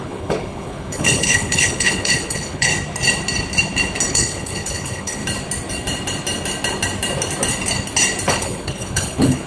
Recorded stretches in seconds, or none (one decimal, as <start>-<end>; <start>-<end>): 2.7-4.1; 5.2-8.3